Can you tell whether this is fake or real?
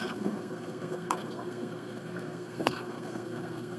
fake